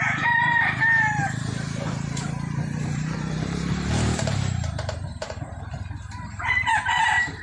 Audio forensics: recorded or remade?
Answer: remade